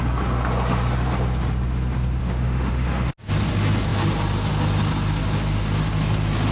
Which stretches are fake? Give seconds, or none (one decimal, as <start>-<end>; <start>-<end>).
2.2-3.1